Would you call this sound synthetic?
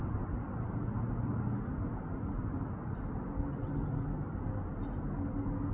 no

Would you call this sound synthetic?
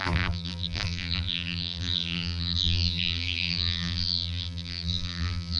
yes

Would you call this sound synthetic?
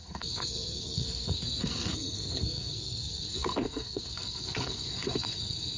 yes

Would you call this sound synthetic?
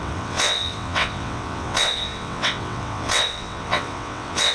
yes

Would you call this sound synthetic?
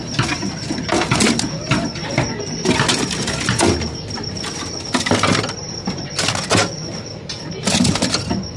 no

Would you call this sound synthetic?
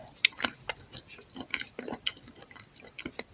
no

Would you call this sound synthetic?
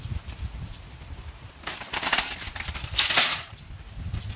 no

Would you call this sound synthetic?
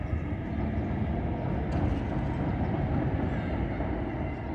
no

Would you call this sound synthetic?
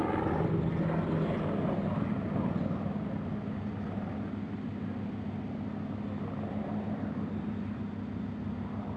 no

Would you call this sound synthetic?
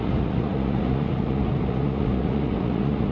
yes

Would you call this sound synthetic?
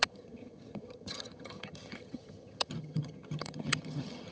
yes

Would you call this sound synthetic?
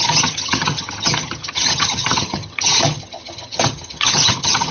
yes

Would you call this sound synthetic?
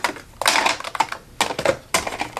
no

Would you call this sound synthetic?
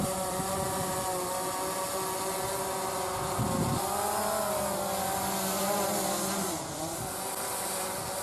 no